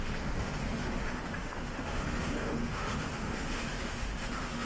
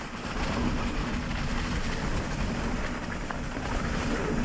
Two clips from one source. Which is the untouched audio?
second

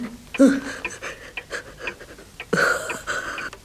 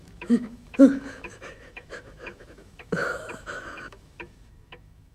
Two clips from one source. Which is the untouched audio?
first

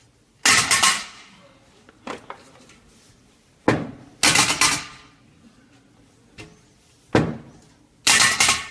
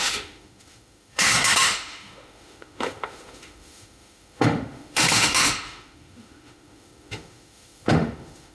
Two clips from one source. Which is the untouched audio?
first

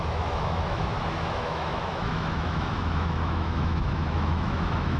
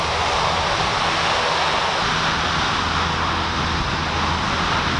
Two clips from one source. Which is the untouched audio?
second